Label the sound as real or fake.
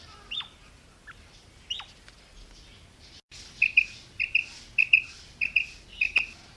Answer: real